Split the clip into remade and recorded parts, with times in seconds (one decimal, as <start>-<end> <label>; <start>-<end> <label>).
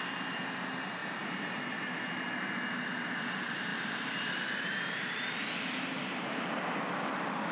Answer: 0.0-1.0 recorded; 1.0-1.6 remade; 1.6-3.7 recorded; 3.7-5.4 remade; 5.4-7.5 recorded